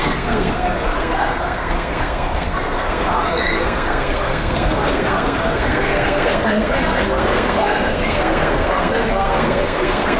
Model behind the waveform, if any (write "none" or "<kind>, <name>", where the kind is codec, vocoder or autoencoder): codec, SNAC